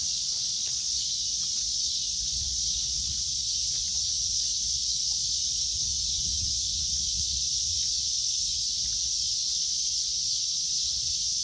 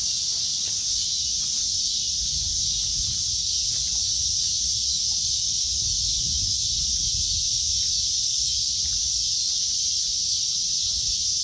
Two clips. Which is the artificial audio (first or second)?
first